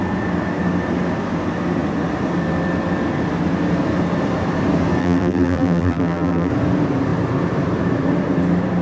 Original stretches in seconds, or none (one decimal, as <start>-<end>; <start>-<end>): 0.0-5.0; 6.5-8.8